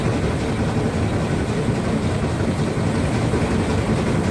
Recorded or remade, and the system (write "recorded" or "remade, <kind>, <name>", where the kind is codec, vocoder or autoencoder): recorded